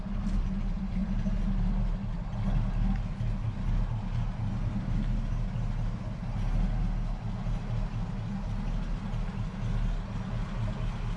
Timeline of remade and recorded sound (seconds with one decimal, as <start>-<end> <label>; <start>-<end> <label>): 0.0-11.2 recorded